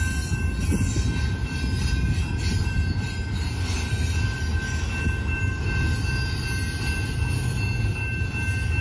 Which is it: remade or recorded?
recorded